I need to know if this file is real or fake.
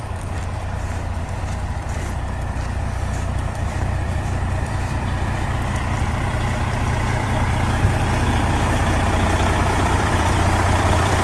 fake